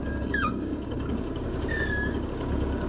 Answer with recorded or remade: remade